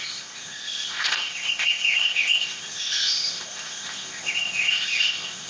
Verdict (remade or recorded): remade